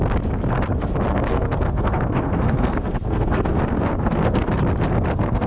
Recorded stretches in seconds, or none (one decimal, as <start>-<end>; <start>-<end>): 0.0-1.1; 4.4-4.9